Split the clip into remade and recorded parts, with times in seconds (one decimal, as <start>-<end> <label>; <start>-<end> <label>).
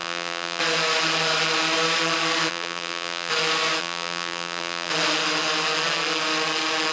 0.0-0.6 remade; 0.6-2.5 recorded; 2.5-3.3 remade; 3.3-3.8 recorded; 3.8-4.9 remade; 4.9-6.9 recorded